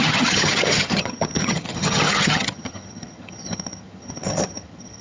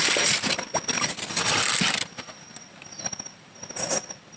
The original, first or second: second